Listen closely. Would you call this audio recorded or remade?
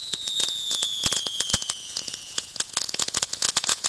remade